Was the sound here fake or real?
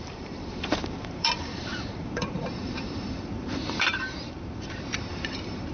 fake